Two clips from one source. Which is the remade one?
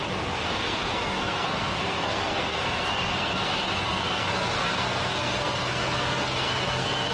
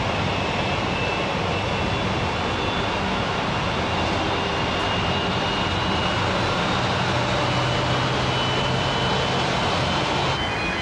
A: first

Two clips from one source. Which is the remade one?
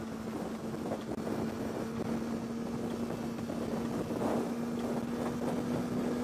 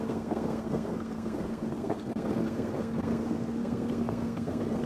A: second